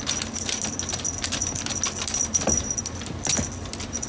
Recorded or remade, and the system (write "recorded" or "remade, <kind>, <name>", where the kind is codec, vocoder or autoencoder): recorded